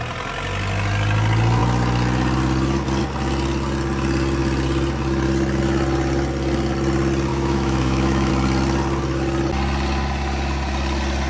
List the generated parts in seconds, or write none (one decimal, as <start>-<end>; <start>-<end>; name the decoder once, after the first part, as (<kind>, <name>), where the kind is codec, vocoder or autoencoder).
7.3-8.3 (autoencoder, DAC-VAE)